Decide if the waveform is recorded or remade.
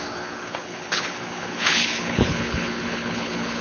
remade